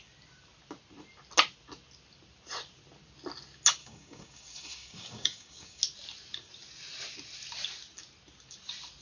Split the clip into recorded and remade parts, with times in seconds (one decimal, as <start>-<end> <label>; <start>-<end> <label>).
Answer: 0.0-3.8 recorded; 3.8-5.8 remade; 5.8-9.0 recorded